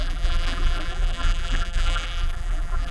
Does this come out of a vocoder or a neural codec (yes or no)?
yes